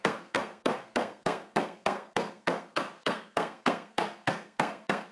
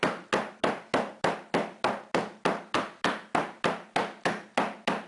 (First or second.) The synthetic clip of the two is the first